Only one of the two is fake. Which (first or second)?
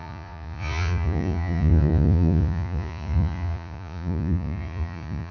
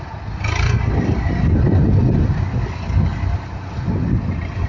first